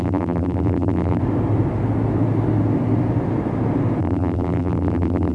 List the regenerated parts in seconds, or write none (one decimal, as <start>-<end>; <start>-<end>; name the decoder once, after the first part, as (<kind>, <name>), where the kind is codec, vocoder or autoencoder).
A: 0.0-1.2 (vocoder, BigVGAN v2); 4.0-5.3